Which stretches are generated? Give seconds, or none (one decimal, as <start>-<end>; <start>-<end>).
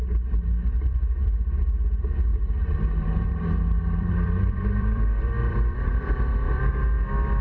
2.3-6.7